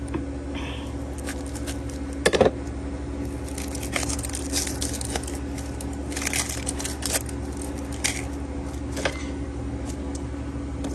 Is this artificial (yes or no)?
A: no